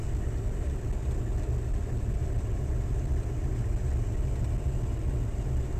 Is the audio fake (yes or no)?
no